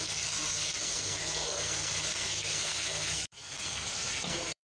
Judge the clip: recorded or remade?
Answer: remade